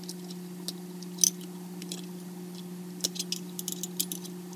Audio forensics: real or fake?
real